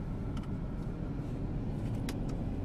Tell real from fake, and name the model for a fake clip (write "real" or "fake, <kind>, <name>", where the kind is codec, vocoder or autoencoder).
real